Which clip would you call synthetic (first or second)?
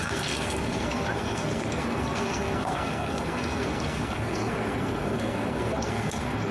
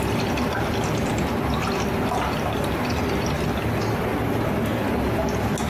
first